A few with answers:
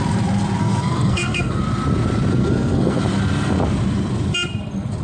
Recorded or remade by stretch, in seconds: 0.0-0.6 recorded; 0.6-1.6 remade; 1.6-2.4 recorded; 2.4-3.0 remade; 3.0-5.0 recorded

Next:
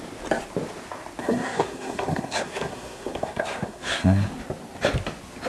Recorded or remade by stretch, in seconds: 0.0-1.2 recorded; 1.2-4.3 remade; 4.3-5.5 recorded

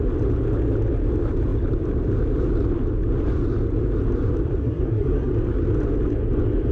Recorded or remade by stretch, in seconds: 0.0-4.6 recorded; 4.6-5.3 remade; 5.3-6.7 recorded